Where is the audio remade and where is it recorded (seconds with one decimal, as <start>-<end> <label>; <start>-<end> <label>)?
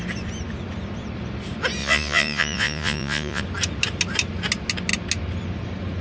0.0-1.8 recorded; 1.8-3.4 remade; 3.4-6.0 recorded